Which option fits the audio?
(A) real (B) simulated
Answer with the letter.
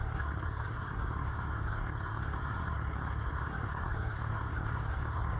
B